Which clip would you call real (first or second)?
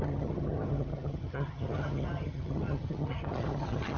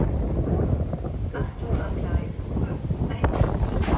second